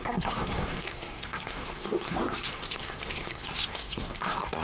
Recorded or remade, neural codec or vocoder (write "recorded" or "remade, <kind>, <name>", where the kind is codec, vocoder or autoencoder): remade, codec, SNAC